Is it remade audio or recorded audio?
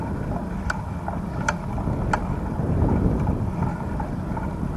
recorded